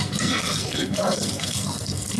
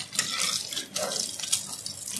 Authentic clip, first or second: second